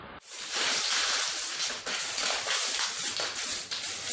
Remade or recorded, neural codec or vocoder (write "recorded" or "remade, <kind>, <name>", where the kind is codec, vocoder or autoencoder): remade, vocoder, BigVGAN v2